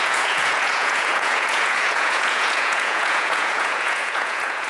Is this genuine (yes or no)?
no